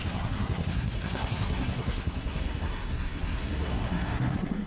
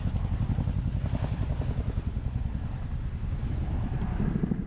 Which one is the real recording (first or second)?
second